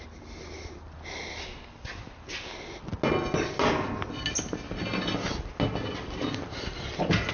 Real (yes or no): yes